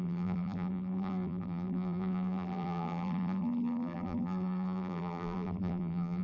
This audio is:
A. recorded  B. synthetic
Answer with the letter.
B